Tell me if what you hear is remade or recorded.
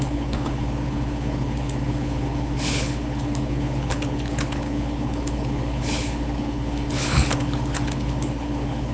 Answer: remade